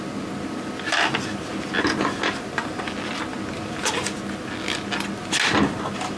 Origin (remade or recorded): recorded